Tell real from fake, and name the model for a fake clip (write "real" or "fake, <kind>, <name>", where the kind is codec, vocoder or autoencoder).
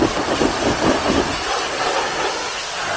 real